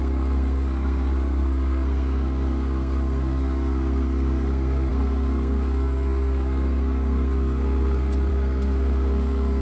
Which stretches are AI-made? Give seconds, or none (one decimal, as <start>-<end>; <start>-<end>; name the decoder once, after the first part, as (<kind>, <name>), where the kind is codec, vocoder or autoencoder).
0.0-9.6 (codec, SNAC)